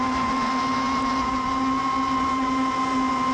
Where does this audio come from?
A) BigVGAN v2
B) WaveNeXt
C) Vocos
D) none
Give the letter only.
D